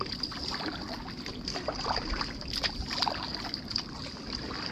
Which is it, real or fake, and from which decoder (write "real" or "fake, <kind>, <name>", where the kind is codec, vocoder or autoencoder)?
real